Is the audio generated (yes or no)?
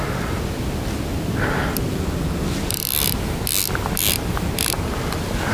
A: no